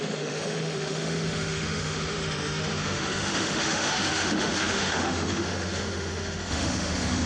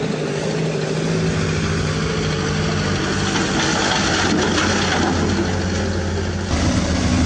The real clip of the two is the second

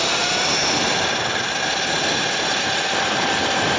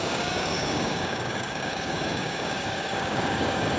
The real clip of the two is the first